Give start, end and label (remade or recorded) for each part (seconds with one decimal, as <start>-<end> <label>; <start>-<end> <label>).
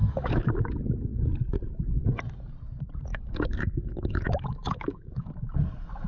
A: 0.0-0.7 remade; 0.7-3.1 recorded; 3.1-5.3 remade; 5.3-6.1 recorded